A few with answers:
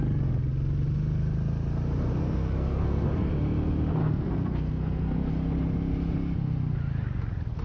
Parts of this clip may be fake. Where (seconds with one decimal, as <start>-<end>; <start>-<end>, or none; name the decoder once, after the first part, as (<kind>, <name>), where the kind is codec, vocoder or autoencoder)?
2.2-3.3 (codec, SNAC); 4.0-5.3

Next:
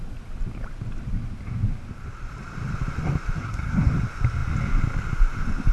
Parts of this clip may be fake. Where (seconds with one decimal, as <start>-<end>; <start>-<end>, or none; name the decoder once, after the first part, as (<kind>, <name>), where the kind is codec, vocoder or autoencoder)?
3.4-3.9 (codec, SNAC)

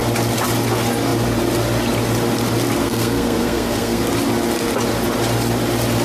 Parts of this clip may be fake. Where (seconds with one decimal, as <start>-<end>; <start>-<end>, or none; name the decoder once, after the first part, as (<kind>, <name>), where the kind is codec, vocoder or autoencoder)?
2.8-4.0 (codec, SNAC)